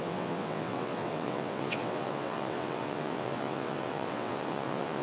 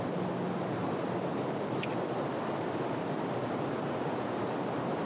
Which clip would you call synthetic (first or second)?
first